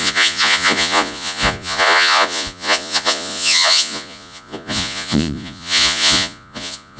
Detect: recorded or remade remade